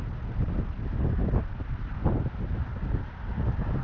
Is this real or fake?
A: real